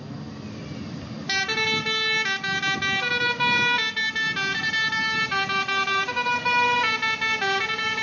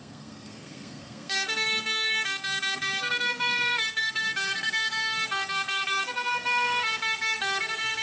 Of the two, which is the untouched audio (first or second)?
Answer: first